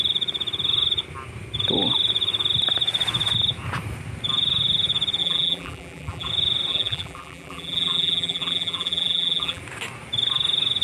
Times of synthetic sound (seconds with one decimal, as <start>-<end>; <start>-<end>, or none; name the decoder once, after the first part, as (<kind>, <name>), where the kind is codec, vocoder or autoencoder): 5.2-6.3 (vocoder, BigVGAN v2); 6.7-9.6